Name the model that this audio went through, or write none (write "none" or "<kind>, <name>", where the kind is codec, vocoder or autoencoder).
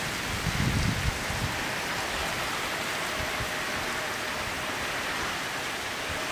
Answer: none